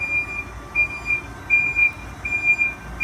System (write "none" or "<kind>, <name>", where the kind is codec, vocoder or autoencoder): none